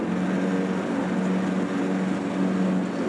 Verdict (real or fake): real